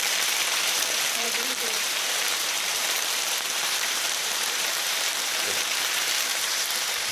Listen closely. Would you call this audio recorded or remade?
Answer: remade